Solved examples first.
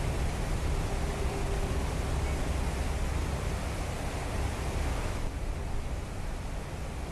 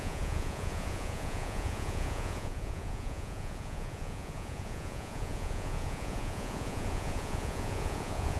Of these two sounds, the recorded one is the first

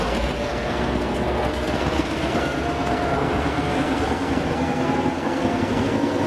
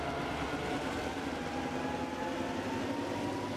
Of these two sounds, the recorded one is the second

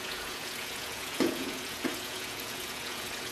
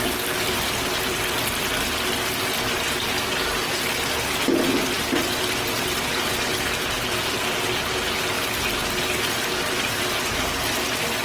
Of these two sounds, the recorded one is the second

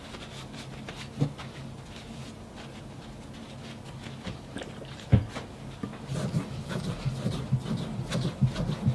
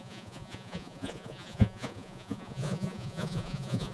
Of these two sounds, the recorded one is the first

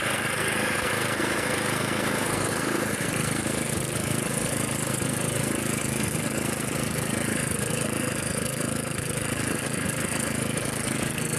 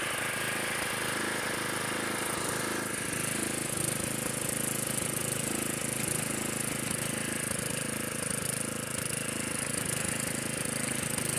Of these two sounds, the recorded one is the second